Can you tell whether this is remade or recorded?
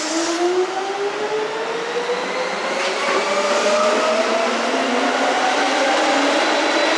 recorded